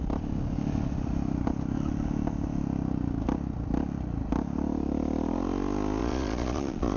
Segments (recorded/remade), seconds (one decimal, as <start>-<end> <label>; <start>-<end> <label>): 0.0-6.0 recorded; 6.0-7.0 remade